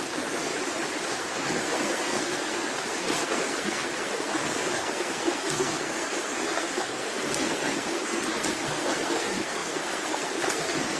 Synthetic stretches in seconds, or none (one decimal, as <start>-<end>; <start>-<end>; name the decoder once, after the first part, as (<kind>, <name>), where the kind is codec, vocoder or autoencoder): 0.0-0.5 (codec, SNAC); 1.1-11.0